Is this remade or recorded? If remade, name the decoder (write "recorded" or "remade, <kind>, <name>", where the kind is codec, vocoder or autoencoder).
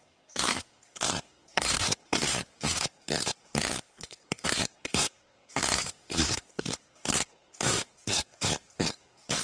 remade, codec, SNAC